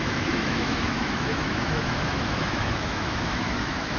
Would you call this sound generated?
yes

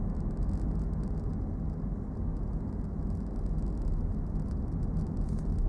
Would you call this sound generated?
no